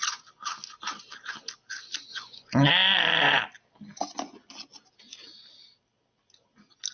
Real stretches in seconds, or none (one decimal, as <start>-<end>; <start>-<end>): 0.0-2.1; 2.7-6.9